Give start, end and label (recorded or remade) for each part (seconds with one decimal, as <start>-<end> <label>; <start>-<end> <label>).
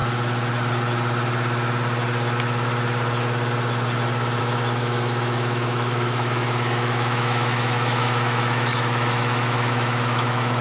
0.0-4.4 recorded; 4.4-10.6 remade